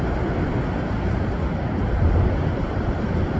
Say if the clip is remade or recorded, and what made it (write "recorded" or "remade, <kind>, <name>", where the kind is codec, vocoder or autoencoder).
recorded